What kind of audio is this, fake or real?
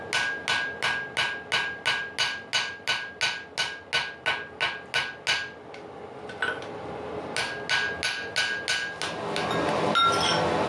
real